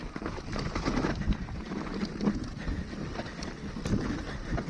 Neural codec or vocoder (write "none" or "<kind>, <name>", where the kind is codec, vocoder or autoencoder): none